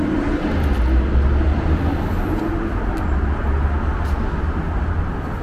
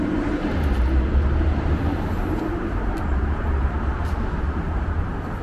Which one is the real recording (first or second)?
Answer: first